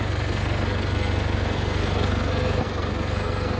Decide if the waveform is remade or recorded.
remade